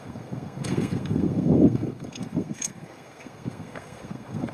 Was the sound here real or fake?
fake